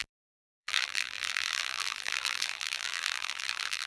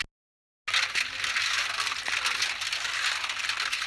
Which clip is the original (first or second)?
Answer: second